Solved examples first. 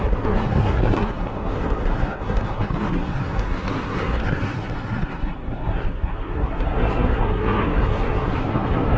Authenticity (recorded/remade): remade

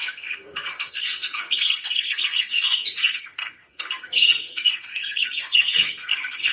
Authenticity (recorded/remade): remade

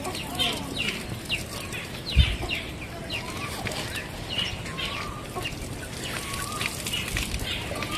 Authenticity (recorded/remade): recorded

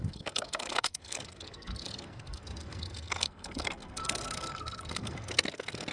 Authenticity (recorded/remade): remade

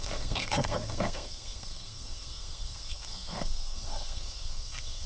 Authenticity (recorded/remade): remade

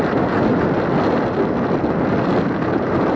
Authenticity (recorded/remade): recorded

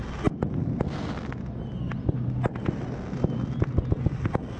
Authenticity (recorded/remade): recorded